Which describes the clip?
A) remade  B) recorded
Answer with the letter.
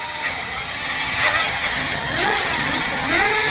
A